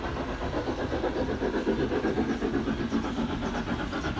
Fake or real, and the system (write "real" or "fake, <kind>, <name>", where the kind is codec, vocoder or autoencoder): real